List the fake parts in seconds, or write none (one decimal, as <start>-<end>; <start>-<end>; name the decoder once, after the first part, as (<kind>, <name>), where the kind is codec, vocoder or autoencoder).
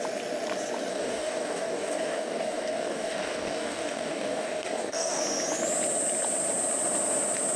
0.9-5.2 (codec, DAC)